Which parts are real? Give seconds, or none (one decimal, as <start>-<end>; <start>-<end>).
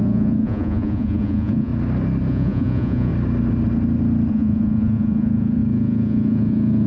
1.7-2.3; 3.1-4.3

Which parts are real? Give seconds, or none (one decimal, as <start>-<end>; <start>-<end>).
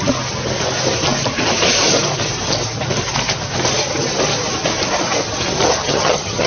0.0-5.8